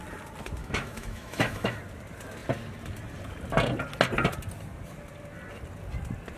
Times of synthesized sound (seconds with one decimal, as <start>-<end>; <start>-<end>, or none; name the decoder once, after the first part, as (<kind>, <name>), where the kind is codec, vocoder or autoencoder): 0.6-1.8 (autoencoder, DAC-VAE)